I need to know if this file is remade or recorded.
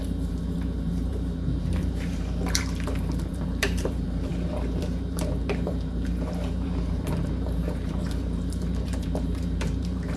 remade